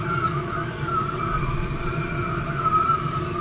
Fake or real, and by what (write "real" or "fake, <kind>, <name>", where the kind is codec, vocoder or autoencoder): real